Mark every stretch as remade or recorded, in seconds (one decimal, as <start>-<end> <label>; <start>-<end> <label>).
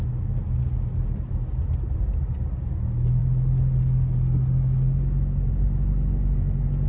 0.0-6.9 recorded